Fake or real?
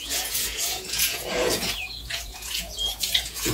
fake